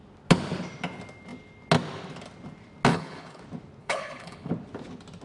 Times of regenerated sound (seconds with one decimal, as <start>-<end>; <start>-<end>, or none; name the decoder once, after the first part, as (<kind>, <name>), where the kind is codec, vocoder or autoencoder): 2.9-3.4 (codec, HILCodec); 3.8-4.5